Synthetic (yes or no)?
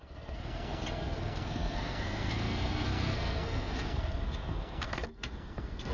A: yes